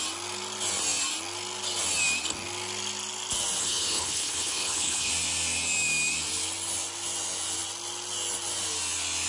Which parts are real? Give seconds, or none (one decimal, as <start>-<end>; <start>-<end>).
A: 0.0-3.6; 5.1-9.3